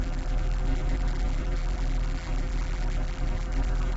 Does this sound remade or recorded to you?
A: remade